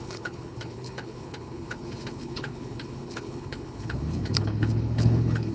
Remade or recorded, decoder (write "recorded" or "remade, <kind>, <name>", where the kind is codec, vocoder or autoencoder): remade, codec, HILCodec